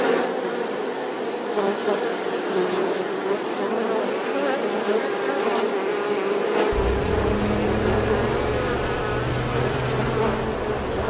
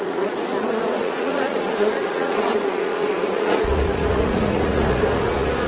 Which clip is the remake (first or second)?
second